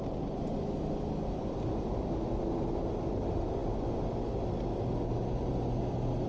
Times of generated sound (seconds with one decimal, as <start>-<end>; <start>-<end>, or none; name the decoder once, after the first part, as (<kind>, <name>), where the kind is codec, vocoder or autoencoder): none